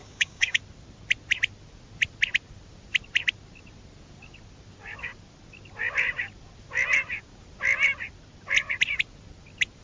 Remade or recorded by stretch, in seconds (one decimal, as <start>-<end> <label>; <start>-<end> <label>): 0.0-0.6 remade; 0.6-9.8 recorded